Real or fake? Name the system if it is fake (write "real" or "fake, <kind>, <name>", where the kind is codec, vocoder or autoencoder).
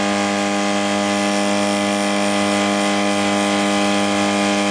real